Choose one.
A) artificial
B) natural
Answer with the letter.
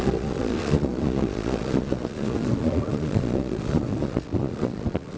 A